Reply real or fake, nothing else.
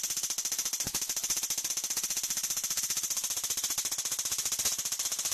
real